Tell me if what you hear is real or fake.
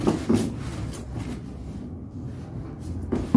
real